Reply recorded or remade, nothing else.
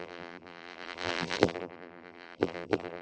remade